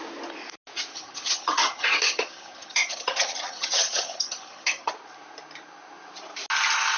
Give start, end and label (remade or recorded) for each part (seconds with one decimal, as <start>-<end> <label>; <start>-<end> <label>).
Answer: 0.0-0.9 recorded; 0.9-4.9 remade; 4.9-7.0 recorded